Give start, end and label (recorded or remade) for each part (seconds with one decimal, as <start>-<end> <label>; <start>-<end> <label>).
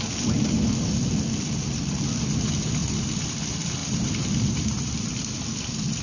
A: 0.0-3.8 recorded; 3.8-5.2 remade; 5.2-6.0 recorded